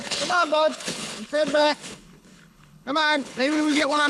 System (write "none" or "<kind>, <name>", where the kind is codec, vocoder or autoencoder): codec, HILCodec